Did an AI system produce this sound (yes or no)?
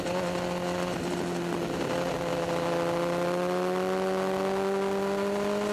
no